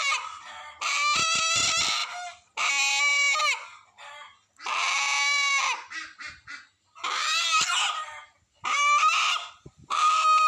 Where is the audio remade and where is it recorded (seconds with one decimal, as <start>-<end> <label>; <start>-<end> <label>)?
0.0-10.5 recorded